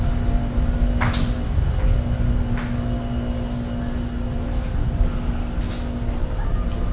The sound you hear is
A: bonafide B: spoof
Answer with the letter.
A